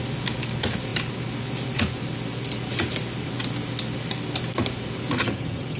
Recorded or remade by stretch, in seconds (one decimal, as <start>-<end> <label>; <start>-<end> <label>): 0.0-5.2 recorded; 5.2-5.8 remade